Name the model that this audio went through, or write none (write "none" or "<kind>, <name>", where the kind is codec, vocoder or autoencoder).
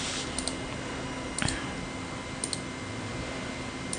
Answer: none